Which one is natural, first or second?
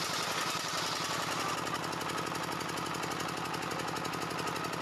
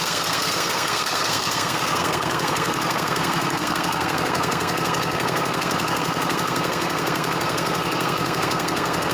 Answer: first